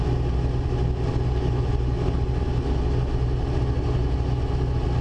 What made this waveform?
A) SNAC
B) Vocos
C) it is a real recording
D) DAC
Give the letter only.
C